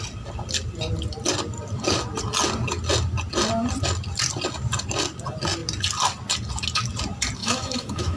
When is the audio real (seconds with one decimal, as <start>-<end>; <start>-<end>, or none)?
0.0-7.4